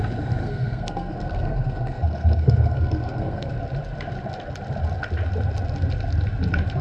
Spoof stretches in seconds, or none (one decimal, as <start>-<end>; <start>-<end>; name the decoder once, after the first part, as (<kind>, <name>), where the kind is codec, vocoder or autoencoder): 0.4-3.5 (codec, SNAC)